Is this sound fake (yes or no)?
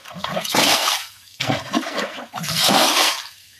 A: yes